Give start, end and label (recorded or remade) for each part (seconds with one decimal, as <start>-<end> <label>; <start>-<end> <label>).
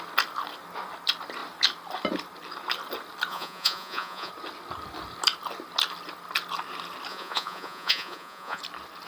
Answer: 0.0-3.3 recorded; 3.3-4.3 remade; 4.3-7.1 recorded; 7.1-8.6 remade; 8.6-9.1 recorded